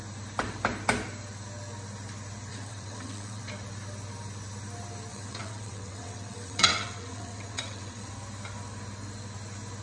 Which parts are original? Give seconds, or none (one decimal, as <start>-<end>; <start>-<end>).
0.0-2.5; 3.4-5.1; 8.1-9.8